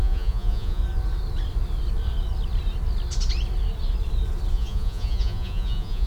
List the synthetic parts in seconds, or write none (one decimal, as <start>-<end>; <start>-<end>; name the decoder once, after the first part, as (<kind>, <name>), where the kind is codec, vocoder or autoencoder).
0.0-0.8 (vocoder, Vocos); 4.5-6.1